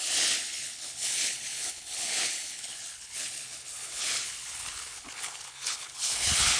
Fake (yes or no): yes